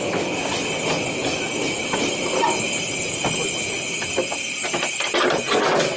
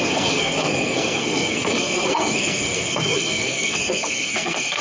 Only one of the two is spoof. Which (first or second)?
second